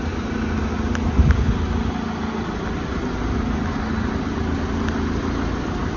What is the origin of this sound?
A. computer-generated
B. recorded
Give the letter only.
B